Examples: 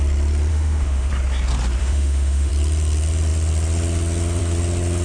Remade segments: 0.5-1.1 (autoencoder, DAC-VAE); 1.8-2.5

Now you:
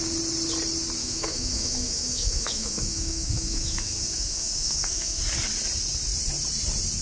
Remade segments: 1.0-5.2 (autoencoder, DAC-VAE)

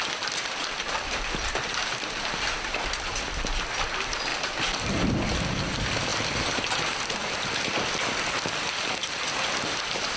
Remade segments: none

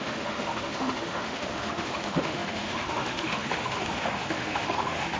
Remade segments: 0.0-5.2 (autoencoder, DAC-VAE)